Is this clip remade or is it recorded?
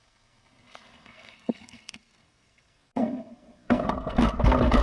remade